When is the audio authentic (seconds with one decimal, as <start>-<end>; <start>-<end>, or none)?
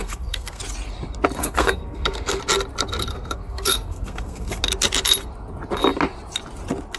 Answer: 0.6-1.4; 2.4-3.1; 4.6-7.0